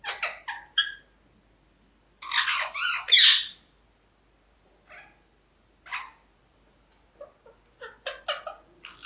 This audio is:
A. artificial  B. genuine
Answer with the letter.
B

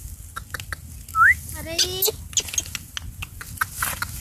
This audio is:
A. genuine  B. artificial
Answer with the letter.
A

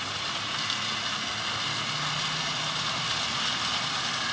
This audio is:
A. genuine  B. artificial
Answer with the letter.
A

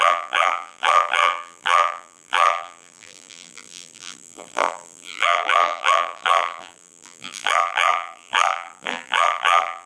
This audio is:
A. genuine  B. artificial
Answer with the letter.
B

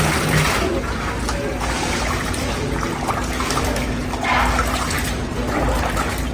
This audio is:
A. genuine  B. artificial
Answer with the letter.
A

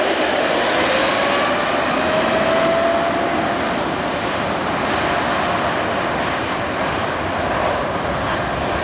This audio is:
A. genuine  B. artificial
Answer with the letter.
A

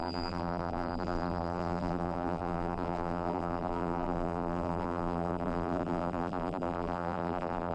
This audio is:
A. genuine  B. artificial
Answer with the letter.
B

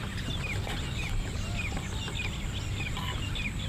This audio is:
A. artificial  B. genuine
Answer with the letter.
B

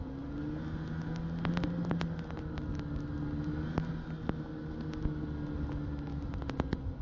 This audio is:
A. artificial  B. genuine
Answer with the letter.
B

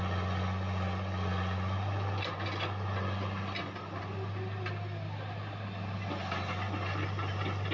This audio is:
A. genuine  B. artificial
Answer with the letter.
A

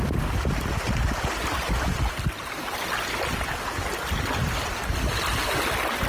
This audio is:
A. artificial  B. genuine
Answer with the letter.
B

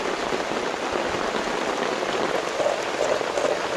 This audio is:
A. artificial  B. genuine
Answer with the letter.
B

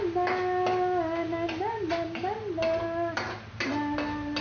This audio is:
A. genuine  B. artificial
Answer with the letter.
A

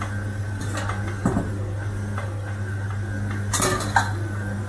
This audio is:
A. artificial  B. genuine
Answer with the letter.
B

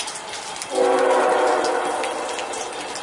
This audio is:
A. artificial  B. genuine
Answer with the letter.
B